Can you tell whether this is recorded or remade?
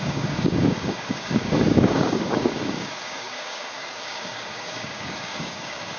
remade